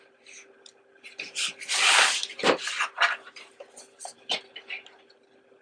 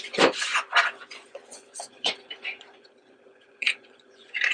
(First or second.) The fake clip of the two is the second